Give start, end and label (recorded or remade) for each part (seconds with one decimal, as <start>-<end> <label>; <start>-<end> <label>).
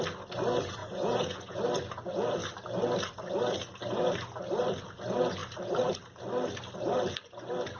0.0-0.8 recorded; 0.8-1.6 remade; 1.6-7.8 recorded